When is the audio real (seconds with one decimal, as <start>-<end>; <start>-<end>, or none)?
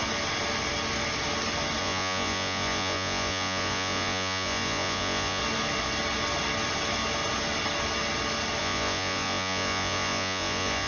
0.0-1.8; 5.4-8.6